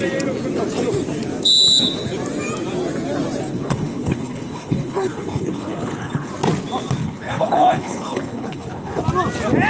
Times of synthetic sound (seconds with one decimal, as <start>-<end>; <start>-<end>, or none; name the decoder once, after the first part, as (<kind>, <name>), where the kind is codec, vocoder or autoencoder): 3.5-6.3 (codec, HILCodec); 7.0-9.0